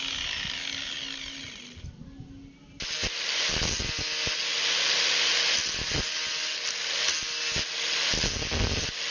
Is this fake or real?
real